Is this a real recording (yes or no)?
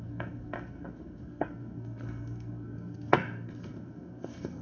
no